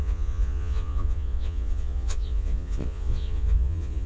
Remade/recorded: remade